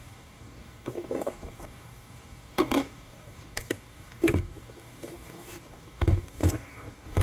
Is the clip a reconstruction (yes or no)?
yes